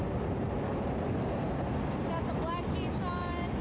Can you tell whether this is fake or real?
real